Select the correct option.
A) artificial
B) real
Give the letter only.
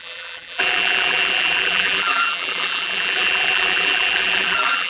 A